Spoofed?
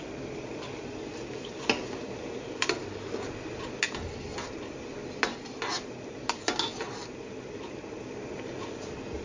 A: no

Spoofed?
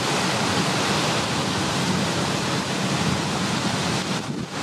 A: no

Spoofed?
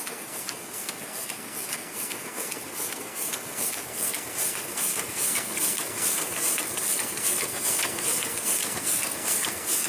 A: yes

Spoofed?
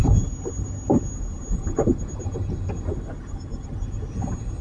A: no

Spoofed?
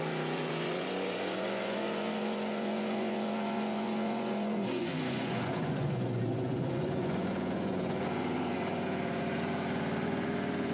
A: yes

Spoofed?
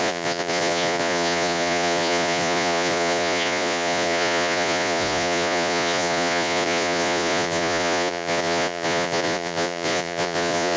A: yes